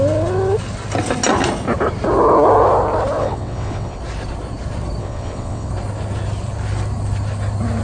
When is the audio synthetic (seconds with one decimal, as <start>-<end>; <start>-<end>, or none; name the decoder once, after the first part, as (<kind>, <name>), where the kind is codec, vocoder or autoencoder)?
3.2-4.0 (vocoder, WaveNeXt); 5.0-5.7